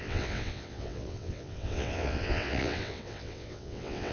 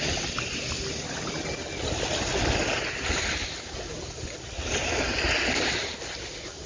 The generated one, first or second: first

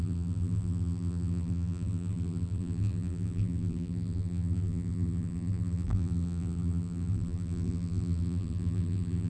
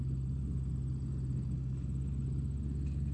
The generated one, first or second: first